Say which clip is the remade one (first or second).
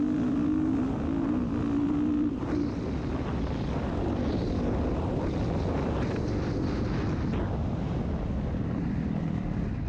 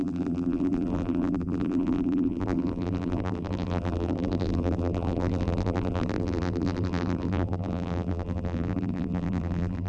second